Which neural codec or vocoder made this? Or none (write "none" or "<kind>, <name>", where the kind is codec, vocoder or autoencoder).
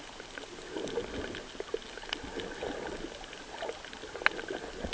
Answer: none